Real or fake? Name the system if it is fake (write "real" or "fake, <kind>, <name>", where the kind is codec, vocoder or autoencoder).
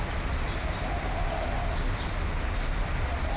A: real